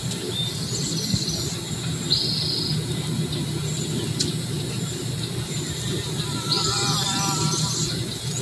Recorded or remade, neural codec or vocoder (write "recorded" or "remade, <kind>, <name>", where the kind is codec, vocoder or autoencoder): recorded